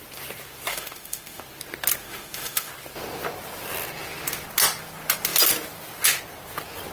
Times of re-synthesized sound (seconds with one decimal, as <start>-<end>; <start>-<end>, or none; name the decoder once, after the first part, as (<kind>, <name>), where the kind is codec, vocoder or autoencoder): 0.7-1.4 (autoencoder, DAC-VAE); 2.0-2.7